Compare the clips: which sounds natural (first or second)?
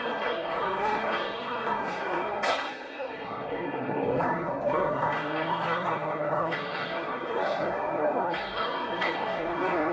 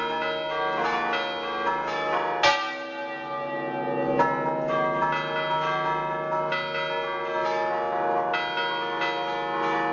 second